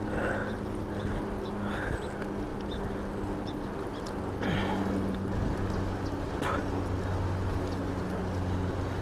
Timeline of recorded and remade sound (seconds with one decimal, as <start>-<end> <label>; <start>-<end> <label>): 0.0-9.0 recorded